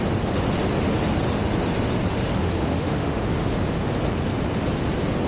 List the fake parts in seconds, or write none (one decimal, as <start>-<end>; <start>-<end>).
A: 2.1-3.7